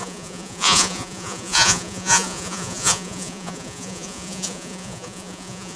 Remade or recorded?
remade